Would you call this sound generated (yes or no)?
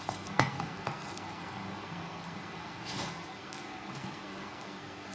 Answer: yes